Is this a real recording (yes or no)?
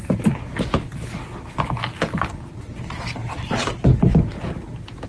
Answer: yes